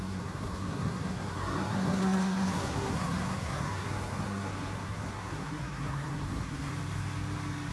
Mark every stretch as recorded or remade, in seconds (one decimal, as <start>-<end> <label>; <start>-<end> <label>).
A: 0.0-6.7 remade; 6.7-7.7 recorded